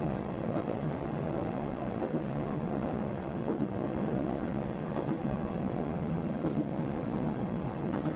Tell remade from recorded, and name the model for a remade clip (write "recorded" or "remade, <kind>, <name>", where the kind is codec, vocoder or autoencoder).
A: remade, vocoder, WaveNeXt